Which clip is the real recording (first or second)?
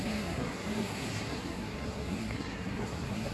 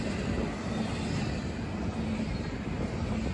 second